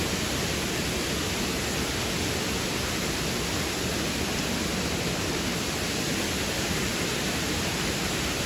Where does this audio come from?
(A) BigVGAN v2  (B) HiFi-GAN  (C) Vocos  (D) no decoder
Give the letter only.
D